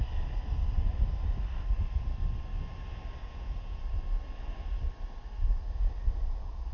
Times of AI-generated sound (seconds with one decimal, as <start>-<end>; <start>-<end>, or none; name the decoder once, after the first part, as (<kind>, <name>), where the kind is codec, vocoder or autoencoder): 3.2-3.8 (vocoder, Vocos)